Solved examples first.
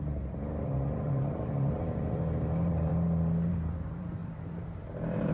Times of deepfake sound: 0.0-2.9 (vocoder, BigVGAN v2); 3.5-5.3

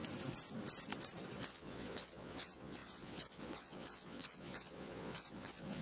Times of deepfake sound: 1.4-5.8 (vocoder, Vocos)

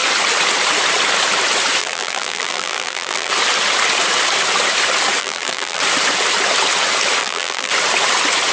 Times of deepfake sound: 1.8-3.3 (vocoder, BigVGAN v2); 5.2-5.8; 7.2-7.7